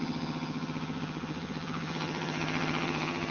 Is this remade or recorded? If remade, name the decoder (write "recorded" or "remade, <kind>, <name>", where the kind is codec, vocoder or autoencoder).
remade, vocoder, HiFi-GAN